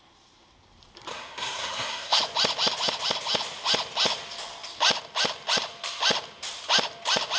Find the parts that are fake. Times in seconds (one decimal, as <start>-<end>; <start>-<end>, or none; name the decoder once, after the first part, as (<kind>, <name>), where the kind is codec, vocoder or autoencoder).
1.1-2.2 (codec, SNAC)